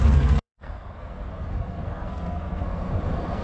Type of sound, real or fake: fake